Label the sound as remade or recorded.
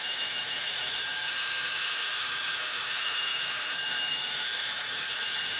remade